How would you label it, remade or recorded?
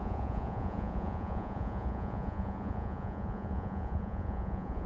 remade